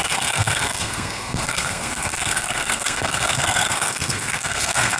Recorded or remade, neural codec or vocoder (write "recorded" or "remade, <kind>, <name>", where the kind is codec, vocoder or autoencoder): remade, codec, SNAC